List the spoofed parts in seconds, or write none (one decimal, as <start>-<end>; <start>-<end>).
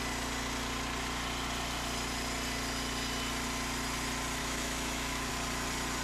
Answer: 4.4-5.3